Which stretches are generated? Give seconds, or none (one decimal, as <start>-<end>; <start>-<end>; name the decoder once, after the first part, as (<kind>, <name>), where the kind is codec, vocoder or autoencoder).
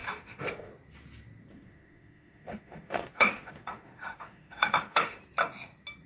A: 0.0-0.7 (autoencoder, DAC-VAE); 1.5-5.2